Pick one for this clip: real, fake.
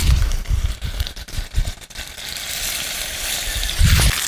real